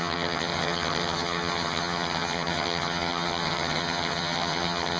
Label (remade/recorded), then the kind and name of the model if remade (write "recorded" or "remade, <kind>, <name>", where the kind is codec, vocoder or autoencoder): remade, vocoder, HiFi-GAN